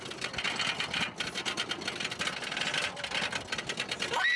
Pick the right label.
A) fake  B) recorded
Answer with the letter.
B